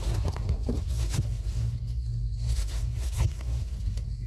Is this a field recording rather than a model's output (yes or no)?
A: no